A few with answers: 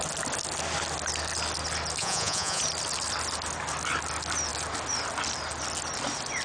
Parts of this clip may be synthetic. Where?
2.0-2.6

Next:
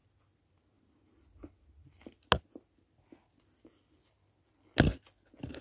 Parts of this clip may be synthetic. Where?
none

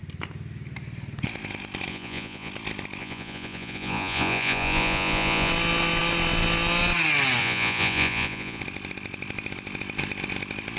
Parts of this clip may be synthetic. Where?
1.9-2.5; 3.0-5.5; 7.4-8.6

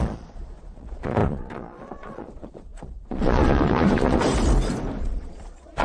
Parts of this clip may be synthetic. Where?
0.0-4.2; 5.0-5.8